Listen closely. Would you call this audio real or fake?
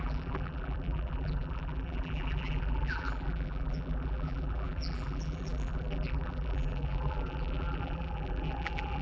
fake